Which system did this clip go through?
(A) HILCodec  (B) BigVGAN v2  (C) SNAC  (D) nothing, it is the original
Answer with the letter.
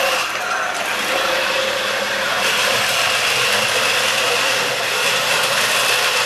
B